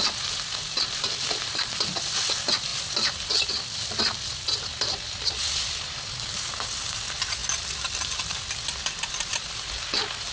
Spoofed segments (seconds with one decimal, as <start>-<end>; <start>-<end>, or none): none